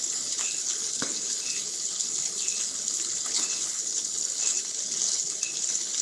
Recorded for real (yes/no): no